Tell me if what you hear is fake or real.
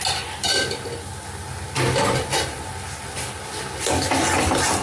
real